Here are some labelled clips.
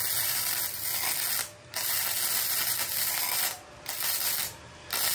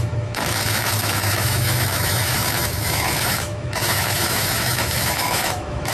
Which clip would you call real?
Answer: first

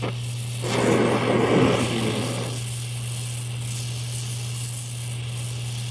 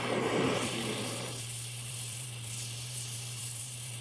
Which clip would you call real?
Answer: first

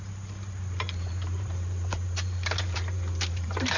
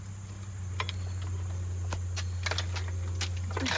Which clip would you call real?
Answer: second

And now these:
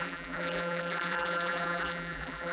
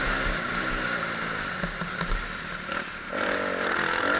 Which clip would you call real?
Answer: second